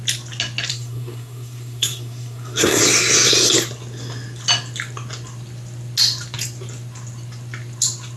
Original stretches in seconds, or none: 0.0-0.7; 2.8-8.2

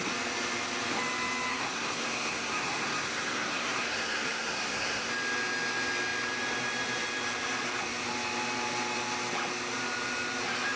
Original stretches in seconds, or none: 0.0-1.5; 5.1-10.8

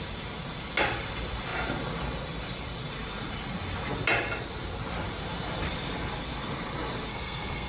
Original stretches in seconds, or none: 0.0-7.1

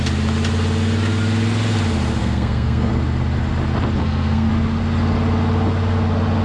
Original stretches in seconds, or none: 0.0-2.2; 2.9-4.0; 4.5-6.4

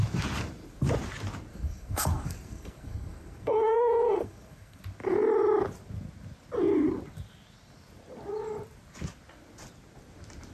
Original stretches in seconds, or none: 0.0-1.5; 4.8-10.5